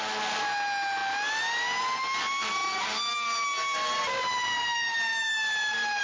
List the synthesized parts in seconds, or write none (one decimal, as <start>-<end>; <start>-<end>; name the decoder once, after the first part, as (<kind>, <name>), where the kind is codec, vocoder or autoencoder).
none

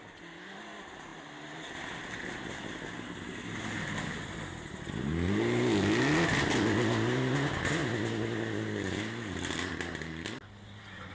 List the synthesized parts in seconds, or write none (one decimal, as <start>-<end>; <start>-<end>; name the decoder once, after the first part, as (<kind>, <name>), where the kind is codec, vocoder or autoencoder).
none

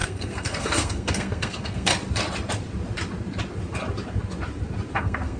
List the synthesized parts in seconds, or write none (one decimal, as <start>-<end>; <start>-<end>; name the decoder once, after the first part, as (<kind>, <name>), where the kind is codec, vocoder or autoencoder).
0.0-1.9 (codec, SNAC); 5.0-5.4

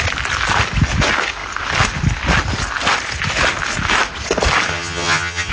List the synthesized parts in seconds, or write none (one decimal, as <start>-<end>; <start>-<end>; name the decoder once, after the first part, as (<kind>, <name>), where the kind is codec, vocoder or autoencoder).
4.7-5.5 (vocoder, HiFi-GAN)

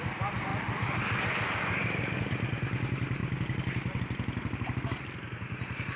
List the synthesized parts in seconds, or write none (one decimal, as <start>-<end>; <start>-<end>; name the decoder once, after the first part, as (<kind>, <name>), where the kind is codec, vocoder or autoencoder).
none